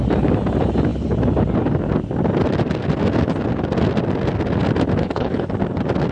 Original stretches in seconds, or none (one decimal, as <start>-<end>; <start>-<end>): 0.0-5.0; 5.5-6.1